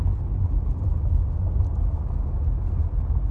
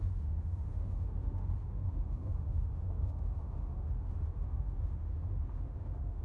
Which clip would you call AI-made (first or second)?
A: second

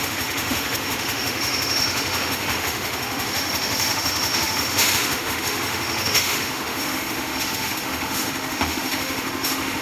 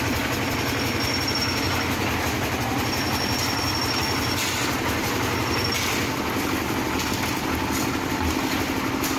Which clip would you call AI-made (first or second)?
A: first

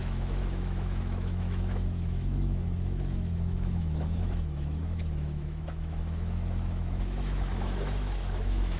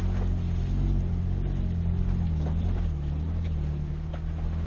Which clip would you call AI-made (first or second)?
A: first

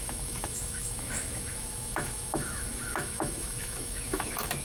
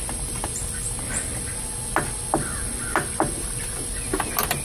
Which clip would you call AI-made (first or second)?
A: first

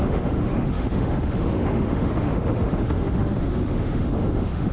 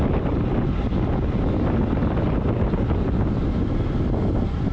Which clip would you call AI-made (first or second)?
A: first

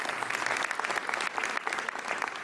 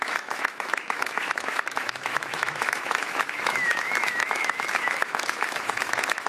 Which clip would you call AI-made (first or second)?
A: second